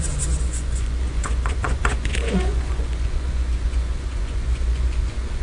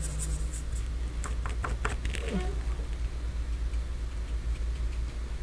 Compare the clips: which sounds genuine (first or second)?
second